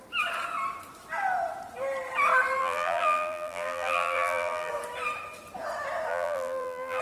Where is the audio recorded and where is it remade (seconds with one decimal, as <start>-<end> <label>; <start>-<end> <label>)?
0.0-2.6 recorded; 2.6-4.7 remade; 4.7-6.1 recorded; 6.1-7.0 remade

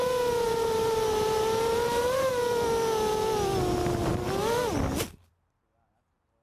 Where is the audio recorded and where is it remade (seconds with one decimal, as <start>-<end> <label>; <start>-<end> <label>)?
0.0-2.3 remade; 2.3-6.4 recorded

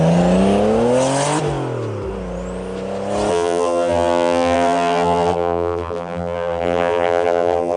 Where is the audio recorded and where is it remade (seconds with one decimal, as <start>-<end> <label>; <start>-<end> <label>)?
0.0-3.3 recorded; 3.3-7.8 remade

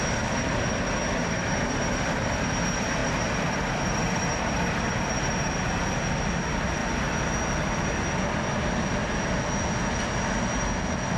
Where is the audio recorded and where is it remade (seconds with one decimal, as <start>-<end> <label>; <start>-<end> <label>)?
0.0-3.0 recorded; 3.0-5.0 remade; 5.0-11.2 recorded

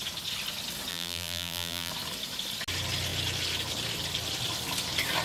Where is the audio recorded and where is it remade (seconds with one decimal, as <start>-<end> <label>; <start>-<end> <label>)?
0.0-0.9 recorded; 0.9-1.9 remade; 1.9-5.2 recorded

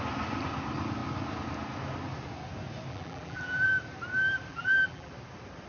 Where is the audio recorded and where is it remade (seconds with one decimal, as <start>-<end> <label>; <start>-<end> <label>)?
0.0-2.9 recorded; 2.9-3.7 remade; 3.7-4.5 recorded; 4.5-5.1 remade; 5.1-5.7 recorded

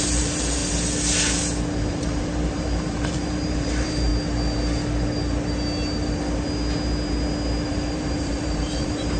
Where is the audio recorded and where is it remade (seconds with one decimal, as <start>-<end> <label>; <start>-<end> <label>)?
0.0-0.6 remade; 0.6-1.7 recorded; 1.7-4.1 remade; 4.1-7.7 recorded; 7.7-9.2 remade

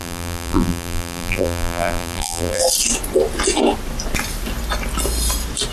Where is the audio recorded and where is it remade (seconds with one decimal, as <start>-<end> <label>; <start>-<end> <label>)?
0.0-2.6 remade; 2.6-5.7 recorded